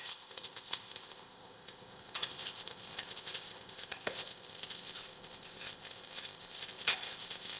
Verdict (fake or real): fake